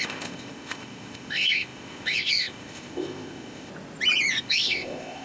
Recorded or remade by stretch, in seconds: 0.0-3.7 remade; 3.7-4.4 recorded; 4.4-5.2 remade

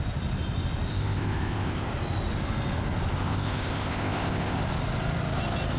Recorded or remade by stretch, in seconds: 0.0-0.9 recorded; 0.9-1.9 remade; 1.9-3.2 recorded; 3.2-4.6 remade; 4.6-5.8 recorded

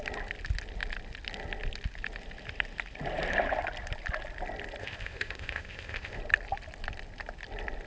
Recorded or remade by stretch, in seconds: 0.0-4.8 recorded; 4.8-6.2 remade; 6.2-7.9 recorded

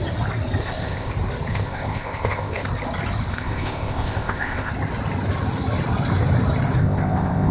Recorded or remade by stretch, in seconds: 0.0-0.6 recorded; 0.6-1.1 remade; 1.1-1.5 recorded; 1.5-2.7 remade; 2.7-3.3 recorded; 3.3-4.7 remade; 4.7-6.8 recorded; 6.8-7.5 remade

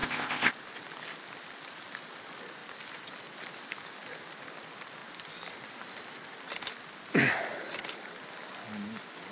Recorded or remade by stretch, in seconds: 0.0-0.5 remade; 0.5-9.3 recorded

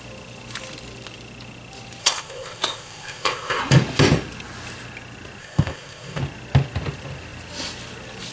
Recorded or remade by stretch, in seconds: 0.0-2.0 recorded; 2.0-3.6 remade; 3.6-5.4 recorded; 5.4-6.2 remade; 6.2-8.3 recorded